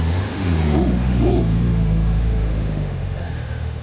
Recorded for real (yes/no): no